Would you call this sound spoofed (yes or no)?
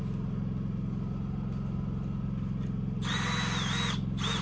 no